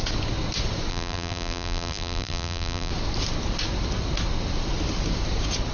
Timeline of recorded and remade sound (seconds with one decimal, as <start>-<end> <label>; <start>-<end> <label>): 0.0-0.9 recorded; 0.9-2.9 remade; 2.9-5.7 recorded

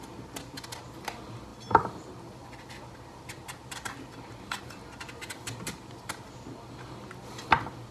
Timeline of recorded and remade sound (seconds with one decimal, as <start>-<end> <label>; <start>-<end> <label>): 0.0-7.9 recorded

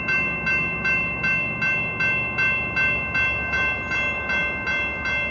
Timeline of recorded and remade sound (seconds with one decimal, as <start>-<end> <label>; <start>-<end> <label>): 0.0-5.3 recorded

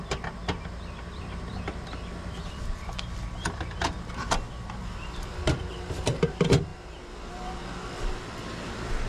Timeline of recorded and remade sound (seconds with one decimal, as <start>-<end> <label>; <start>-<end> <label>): 0.0-0.4 remade; 0.4-1.1 recorded; 1.1-4.2 remade; 4.2-5.0 recorded; 5.0-9.1 remade

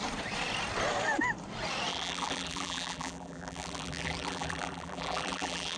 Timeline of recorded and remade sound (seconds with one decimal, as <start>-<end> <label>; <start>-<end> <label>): 0.0-1.9 recorded; 1.9-5.8 remade

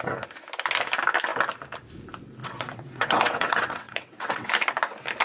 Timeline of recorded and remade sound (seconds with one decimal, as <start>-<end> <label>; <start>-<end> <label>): 0.0-2.4 recorded; 2.4-4.5 remade; 4.5-5.2 recorded

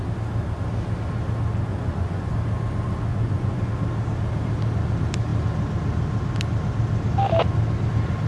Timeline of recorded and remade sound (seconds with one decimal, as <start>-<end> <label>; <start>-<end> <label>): 0.0-1.7 recorded; 1.7-2.3 remade; 2.3-3.1 recorded; 3.1-3.6 remade; 3.6-8.3 recorded